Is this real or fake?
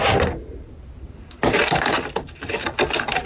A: real